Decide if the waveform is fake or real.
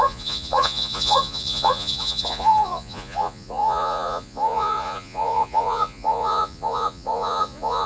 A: fake